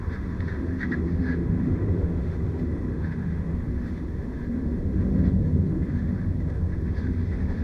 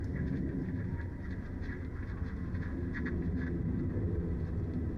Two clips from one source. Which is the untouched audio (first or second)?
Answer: second